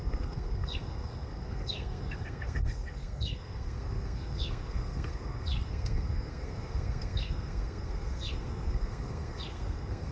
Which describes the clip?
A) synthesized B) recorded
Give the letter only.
A